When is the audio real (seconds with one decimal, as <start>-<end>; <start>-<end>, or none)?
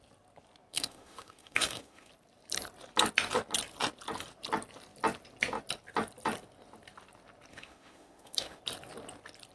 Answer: 0.0-0.7; 2.1-7.5; 8.6-9.5